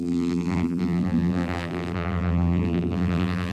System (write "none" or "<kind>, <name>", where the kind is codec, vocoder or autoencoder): vocoder, BigVGAN v2